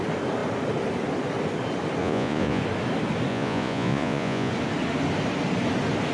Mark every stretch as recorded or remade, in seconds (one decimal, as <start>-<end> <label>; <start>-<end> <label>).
0.0-2.0 recorded; 2.0-2.6 remade; 2.6-3.3 recorded; 3.3-4.5 remade; 4.5-6.1 recorded